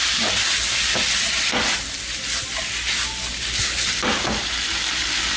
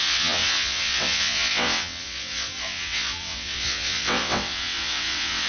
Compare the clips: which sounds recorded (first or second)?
first